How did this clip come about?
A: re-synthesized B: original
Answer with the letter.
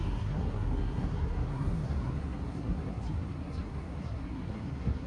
A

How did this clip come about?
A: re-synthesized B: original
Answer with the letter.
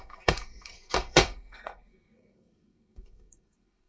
A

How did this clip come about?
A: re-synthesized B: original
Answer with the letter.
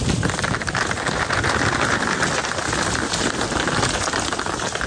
B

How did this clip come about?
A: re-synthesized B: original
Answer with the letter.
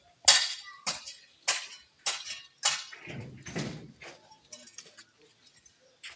B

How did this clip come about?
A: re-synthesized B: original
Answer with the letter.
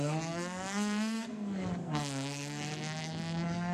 A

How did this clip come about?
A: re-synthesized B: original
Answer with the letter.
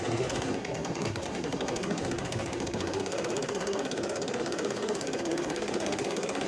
A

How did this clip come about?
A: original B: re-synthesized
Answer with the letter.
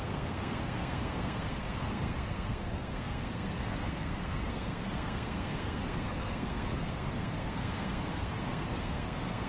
B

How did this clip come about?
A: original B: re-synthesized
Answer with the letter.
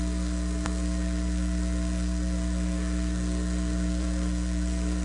B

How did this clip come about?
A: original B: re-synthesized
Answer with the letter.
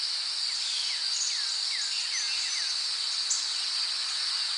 A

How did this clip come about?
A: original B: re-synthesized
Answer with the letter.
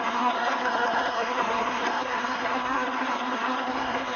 B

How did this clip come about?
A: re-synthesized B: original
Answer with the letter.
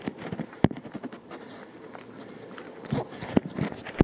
B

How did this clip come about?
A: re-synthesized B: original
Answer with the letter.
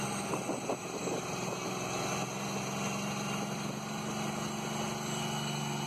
B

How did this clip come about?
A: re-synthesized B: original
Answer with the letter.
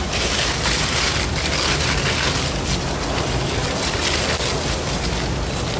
B